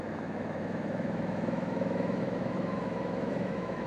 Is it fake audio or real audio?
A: fake